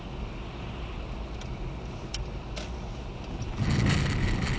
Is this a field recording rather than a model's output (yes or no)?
yes